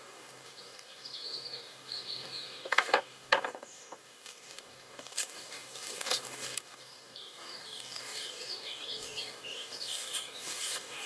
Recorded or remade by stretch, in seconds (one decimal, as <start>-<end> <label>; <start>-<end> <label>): 0.0-11.1 remade